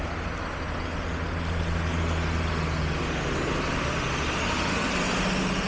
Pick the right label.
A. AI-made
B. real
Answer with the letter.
B